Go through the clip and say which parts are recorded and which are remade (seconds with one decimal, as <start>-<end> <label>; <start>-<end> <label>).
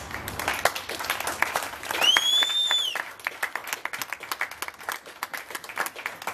0.0-0.5 remade; 0.5-1.5 recorded; 1.5-3.6 remade; 3.6-4.9 recorded; 4.9-6.3 remade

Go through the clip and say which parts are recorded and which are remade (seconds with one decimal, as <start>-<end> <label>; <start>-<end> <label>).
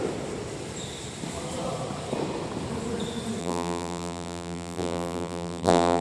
0.0-3.4 recorded; 3.4-6.0 remade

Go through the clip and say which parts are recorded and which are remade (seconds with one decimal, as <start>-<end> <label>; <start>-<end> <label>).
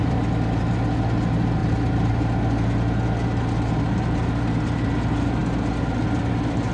0.0-1.6 recorded; 1.6-2.1 remade; 2.1-6.7 recorded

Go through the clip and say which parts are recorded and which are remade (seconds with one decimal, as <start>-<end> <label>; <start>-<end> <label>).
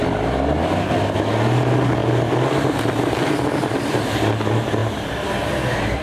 0.0-2.0 recorded; 2.0-4.1 remade; 4.1-4.8 recorded; 4.8-5.4 remade; 5.4-6.0 recorded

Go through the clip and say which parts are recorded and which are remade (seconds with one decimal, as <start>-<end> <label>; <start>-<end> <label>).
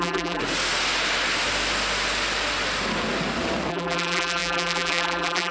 0.0-0.4 remade; 0.4-3.7 recorded; 3.7-5.5 remade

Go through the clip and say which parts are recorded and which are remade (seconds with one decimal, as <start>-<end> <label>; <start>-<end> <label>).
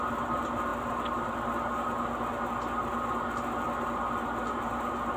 0.0-0.7 recorded; 0.7-1.3 remade; 1.3-5.2 recorded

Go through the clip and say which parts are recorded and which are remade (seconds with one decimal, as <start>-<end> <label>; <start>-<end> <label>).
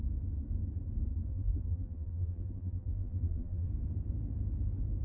0.0-1.3 recorded; 1.3-3.7 remade; 3.7-5.0 recorded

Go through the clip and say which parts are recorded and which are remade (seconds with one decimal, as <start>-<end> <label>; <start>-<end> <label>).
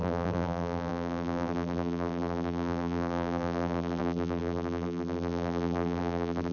0.0-6.5 remade